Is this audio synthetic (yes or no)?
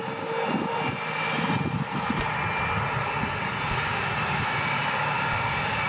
no